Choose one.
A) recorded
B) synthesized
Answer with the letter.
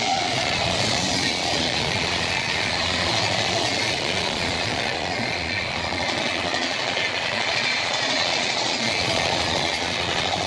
B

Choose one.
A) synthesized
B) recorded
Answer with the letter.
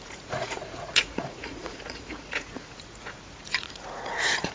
A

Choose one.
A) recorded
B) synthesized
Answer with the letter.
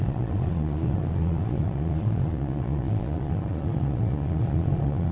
B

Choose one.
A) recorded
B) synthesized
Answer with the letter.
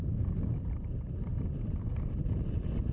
A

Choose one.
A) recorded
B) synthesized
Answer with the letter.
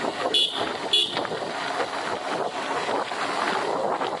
A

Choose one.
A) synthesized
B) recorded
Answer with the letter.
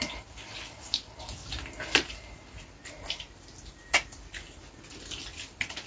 B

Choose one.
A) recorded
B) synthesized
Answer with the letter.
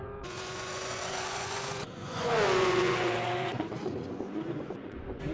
B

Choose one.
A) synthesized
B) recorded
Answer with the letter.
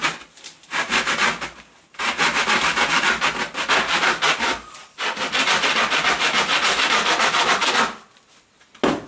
B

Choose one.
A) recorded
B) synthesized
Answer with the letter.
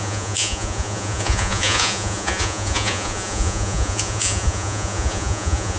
B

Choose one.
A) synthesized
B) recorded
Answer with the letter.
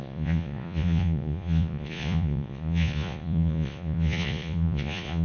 A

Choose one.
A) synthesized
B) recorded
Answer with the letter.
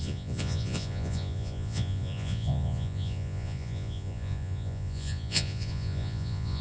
A